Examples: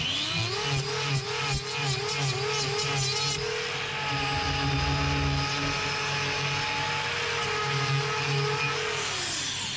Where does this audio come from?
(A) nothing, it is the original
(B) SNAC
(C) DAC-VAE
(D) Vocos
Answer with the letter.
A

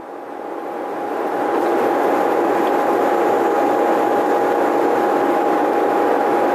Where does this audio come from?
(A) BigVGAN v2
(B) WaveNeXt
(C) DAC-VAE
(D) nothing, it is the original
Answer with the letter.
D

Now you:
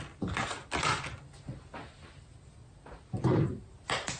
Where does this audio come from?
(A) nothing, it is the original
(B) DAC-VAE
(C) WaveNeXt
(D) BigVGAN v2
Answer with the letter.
A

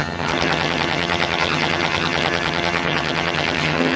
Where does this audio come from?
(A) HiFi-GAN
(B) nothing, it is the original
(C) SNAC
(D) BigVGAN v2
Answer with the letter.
A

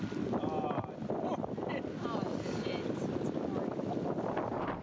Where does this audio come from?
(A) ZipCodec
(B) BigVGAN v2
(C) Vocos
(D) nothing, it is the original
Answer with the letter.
D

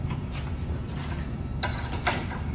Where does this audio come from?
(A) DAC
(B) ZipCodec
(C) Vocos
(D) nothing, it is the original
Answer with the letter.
D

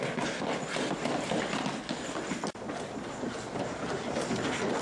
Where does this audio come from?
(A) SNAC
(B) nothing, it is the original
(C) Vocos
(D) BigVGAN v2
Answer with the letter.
B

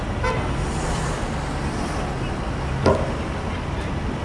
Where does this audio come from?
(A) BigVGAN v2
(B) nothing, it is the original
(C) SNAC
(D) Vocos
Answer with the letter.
B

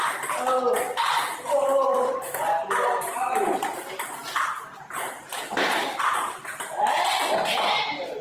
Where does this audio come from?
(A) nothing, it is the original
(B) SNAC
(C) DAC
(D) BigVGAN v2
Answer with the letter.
A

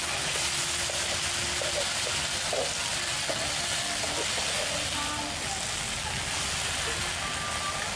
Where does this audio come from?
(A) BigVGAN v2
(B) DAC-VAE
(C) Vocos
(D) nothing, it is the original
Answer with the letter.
D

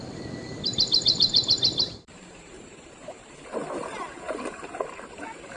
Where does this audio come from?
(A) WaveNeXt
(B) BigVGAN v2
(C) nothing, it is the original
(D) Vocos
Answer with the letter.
B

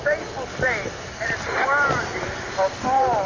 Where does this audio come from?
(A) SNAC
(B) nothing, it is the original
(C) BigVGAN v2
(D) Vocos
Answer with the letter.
B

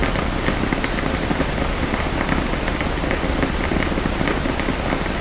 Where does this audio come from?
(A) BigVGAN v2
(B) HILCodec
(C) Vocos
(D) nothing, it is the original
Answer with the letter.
D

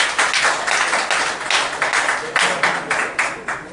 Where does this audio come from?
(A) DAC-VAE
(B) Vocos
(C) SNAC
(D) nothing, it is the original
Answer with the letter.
D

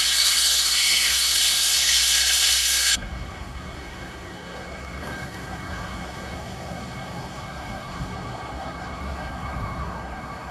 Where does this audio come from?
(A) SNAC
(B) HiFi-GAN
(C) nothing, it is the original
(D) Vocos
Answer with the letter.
A